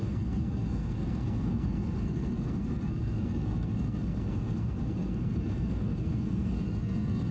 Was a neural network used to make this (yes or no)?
yes